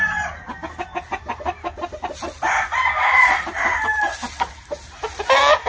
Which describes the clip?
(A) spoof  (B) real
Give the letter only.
B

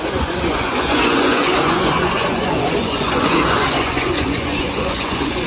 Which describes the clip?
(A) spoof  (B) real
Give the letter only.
A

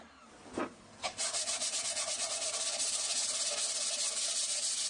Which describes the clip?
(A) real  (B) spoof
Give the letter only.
A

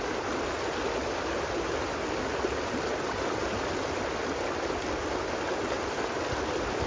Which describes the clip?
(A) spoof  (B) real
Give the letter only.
B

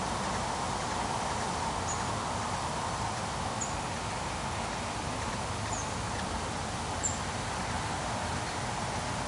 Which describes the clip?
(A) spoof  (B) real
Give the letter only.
B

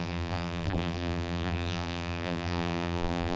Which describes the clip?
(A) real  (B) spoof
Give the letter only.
B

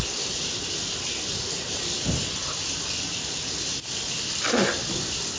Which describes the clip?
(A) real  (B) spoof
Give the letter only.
A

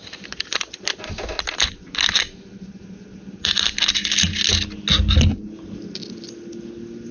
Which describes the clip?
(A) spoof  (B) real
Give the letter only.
B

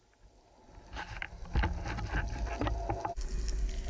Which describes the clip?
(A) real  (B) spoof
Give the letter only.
A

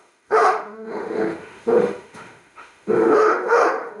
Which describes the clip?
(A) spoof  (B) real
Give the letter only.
A